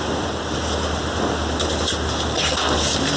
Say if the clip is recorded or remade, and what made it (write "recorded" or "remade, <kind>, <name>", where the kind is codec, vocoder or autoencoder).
recorded